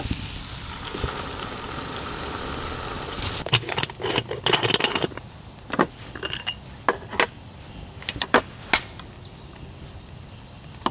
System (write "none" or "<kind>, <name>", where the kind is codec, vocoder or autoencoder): none